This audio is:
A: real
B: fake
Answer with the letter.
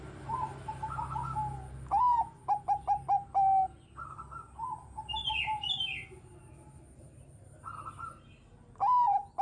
A